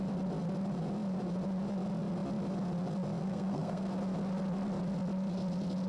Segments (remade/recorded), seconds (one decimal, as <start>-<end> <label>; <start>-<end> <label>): 0.0-3.2 recorded; 3.2-3.9 remade; 3.9-5.9 recorded